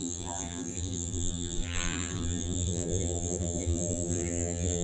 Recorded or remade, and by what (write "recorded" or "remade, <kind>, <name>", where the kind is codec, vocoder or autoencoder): remade, vocoder, BigVGAN v2